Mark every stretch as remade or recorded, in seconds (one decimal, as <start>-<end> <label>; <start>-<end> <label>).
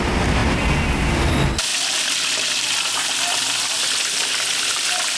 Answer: 0.0-5.2 recorded